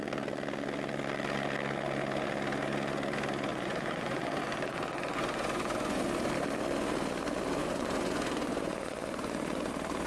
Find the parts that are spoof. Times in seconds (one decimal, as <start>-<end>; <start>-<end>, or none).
3.5-6.0; 7.6-9.7